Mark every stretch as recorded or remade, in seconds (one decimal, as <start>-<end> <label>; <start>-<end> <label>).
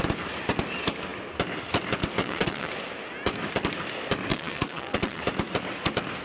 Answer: 0.0-2.2 recorded; 2.2-2.7 remade; 2.7-4.3 recorded; 4.3-5.2 remade; 5.2-6.2 recorded